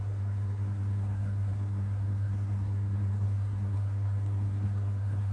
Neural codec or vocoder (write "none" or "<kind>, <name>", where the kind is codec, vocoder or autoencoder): codec, SNAC